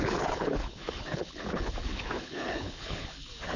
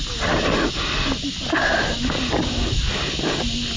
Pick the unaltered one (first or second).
second